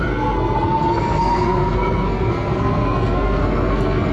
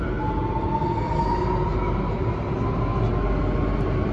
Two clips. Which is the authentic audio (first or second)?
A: second